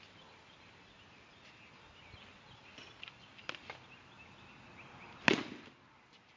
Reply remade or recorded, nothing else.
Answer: recorded